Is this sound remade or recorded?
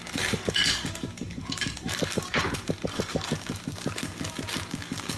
remade